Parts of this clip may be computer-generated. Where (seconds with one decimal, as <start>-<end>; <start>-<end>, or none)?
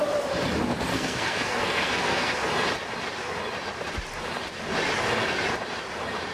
0.9-2.5